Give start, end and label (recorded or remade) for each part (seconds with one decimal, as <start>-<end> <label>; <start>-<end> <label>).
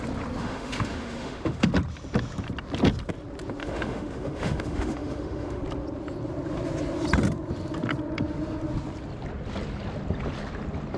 0.0-0.4 recorded; 0.4-1.7 remade; 1.7-3.6 recorded; 3.6-5.6 remade; 5.6-11.0 recorded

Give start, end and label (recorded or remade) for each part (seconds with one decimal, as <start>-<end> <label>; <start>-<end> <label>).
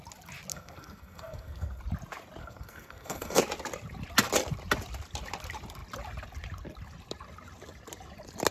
0.0-0.5 recorded; 0.5-1.8 remade; 1.8-2.4 recorded; 2.4-3.4 remade; 3.4-8.5 recorded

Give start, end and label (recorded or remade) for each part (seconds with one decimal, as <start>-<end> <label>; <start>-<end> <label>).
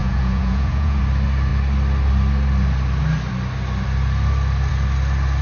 0.0-1.0 remade; 1.0-5.4 recorded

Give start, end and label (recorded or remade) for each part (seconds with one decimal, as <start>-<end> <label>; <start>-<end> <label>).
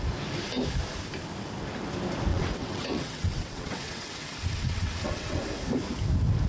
0.0-2.3 recorded; 2.3-5.4 remade; 5.4-6.5 recorded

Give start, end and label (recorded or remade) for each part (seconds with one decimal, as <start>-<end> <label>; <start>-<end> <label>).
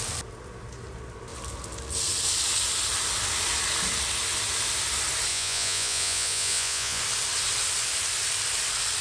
0.0-5.3 recorded; 5.3-7.0 remade; 7.0-9.0 recorded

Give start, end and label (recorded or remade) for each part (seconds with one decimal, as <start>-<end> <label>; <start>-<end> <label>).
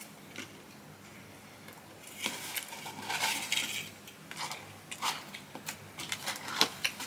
0.0-1.1 remade; 1.1-5.3 recorded; 5.3-7.1 remade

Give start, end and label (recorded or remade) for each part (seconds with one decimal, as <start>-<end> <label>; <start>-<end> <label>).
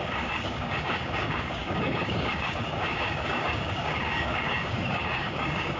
0.0-5.8 remade